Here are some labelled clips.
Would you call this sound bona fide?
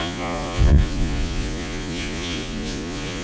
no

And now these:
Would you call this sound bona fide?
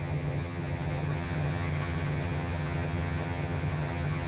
no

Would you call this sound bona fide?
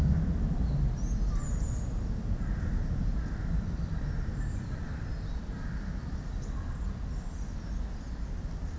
yes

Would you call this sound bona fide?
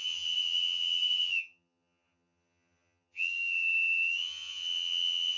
no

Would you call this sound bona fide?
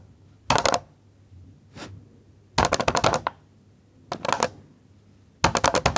yes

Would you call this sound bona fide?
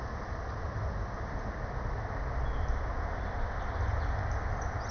yes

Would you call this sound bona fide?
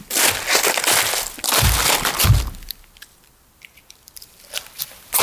yes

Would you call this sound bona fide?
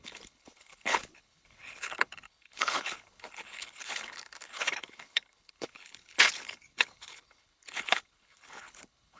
no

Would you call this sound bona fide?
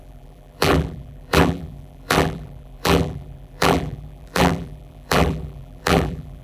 no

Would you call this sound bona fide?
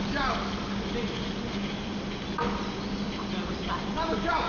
yes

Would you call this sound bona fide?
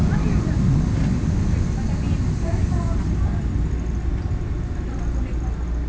yes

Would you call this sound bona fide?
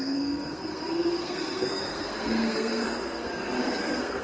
no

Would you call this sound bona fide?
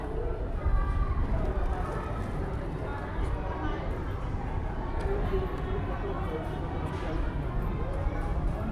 yes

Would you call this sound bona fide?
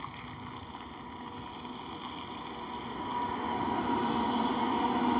yes